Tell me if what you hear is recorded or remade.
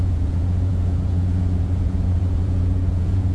remade